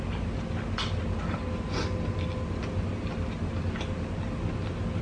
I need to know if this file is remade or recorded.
recorded